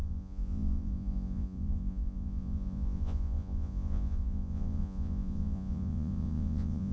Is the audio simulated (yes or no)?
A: yes